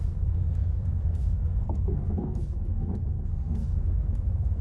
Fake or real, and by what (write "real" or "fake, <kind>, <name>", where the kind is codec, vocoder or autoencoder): fake, codec, SNAC